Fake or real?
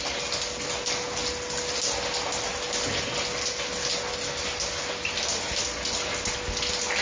real